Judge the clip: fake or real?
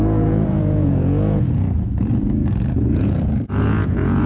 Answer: fake